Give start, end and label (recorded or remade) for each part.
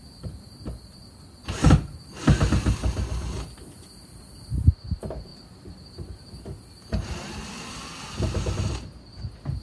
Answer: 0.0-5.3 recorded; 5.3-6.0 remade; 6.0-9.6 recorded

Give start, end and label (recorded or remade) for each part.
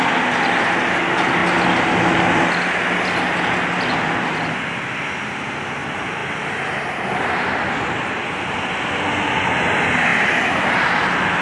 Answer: 0.0-6.2 recorded; 6.2-8.2 remade; 8.2-11.4 recorded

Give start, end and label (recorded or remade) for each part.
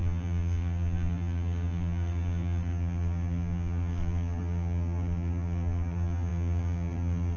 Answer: 0.0-7.4 remade